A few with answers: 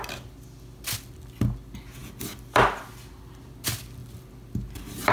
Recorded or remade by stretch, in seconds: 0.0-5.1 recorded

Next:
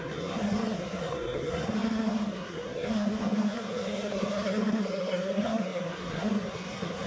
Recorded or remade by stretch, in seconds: 0.0-7.1 remade

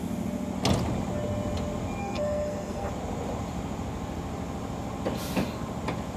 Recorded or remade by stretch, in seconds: 0.0-2.0 recorded; 2.0-2.9 remade; 2.9-6.2 recorded